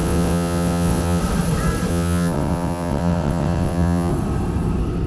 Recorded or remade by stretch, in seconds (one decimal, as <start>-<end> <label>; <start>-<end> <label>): 0.0-1.2 remade; 1.2-1.9 recorded; 1.9-4.1 remade; 4.1-5.1 recorded